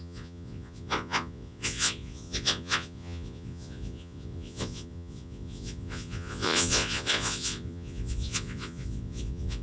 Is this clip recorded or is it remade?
remade